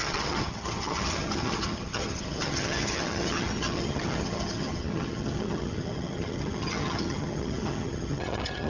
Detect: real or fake fake